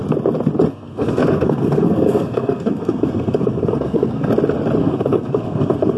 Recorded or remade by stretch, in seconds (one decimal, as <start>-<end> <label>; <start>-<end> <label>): 0.0-0.7 recorded; 0.7-4.3 remade; 4.3-4.8 recorded; 4.8-6.0 remade